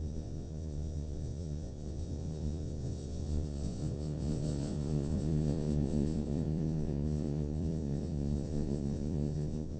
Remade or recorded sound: remade